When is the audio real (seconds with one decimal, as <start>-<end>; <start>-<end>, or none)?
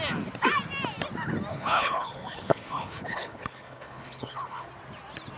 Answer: 0.0-1.5; 4.7-5.4